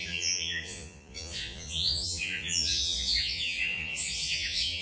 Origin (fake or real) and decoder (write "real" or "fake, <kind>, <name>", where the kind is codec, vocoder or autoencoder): fake, vocoder, Vocos